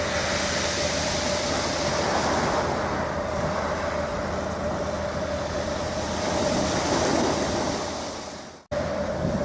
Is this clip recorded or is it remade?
recorded